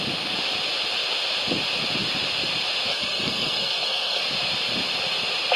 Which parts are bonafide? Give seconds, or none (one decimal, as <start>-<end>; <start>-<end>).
0.0-2.9; 4.2-5.6

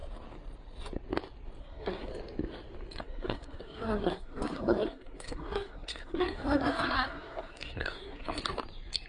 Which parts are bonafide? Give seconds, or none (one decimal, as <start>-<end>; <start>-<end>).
0.0-1.6; 2.1-3.0; 8.4-9.1

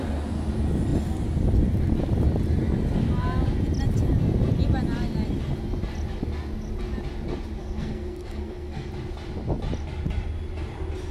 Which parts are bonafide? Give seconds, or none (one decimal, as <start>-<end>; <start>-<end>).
0.0-7.6; 8.9-11.1